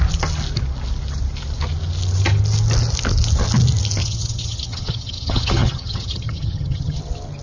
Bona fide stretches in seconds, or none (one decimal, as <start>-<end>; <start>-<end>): 0.0-4.0; 7.0-7.4